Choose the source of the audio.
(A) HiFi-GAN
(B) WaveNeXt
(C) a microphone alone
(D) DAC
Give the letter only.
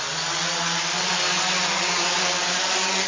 C